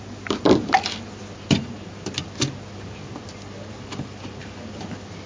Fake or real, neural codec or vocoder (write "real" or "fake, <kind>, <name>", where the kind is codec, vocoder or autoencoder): real